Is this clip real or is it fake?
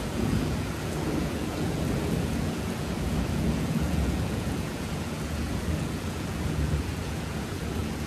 fake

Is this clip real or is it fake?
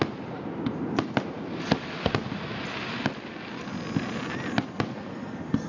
real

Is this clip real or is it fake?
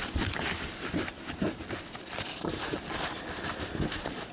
fake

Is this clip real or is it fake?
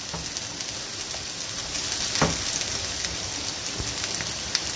real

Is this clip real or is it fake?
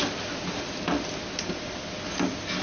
real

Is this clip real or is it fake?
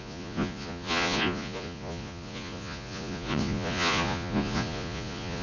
fake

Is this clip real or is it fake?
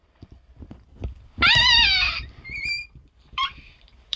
fake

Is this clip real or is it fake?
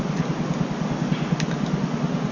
real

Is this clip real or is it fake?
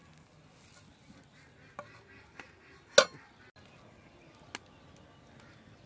real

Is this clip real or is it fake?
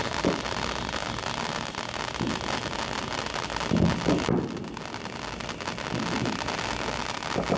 real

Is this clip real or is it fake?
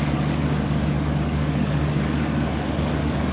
fake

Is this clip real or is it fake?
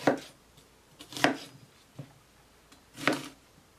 real